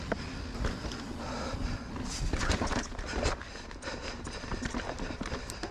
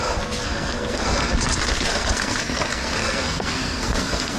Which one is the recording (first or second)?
first